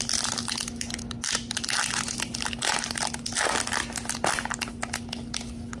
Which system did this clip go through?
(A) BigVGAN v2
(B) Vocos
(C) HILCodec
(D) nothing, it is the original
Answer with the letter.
D